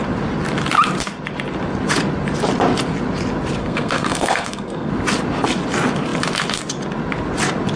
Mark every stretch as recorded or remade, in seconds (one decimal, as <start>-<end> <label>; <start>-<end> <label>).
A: 0.0-3.6 recorded; 3.6-4.9 remade; 4.9-7.8 recorded